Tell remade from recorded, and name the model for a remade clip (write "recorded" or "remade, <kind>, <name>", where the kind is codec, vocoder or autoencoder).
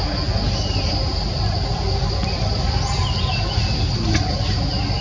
recorded